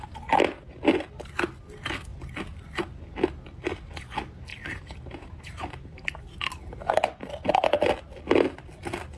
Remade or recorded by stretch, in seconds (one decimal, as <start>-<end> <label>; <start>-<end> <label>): 0.0-4.5 recorded; 4.5-6.2 remade; 6.2-9.2 recorded